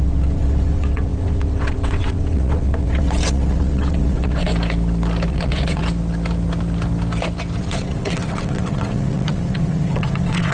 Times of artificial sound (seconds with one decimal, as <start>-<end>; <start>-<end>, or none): 0.0-4.5; 5.3-5.8; 7.6-10.5